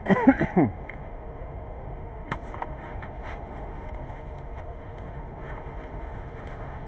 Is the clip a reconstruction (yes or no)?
yes